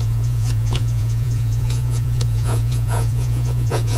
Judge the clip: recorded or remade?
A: remade